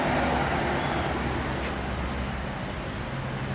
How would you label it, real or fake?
real